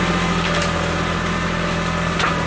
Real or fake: real